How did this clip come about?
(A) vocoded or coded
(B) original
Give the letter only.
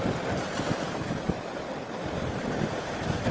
A